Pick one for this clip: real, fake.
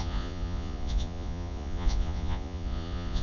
fake